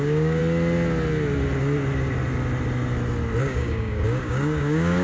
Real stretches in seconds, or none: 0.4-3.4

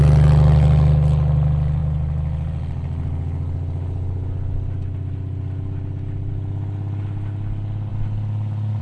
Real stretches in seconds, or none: 0.0-8.8

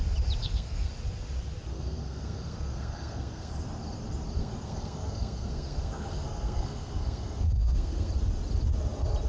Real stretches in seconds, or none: 0.0-0.4; 0.9-1.7; 3.5-4.4; 8.1-9.3

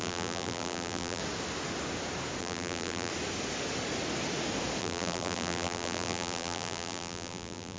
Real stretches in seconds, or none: 1.2-2.4; 3.1-4.8

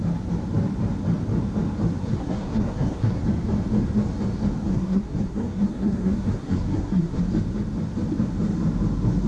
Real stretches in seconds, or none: 0.0-2.0; 3.2-4.7; 7.2-9.3

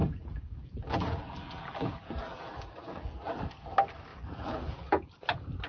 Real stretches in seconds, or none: 3.4-4.1; 5.1-5.7